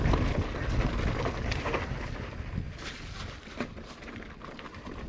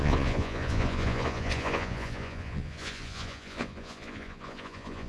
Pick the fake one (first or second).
second